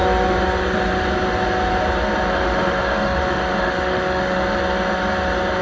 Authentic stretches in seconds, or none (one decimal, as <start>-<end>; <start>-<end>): 0.0-2.3; 4.4-5.6